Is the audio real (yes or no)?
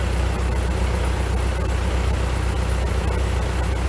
yes